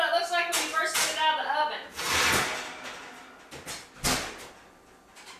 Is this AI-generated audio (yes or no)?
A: no